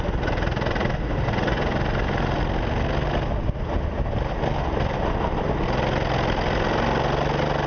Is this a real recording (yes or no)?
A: yes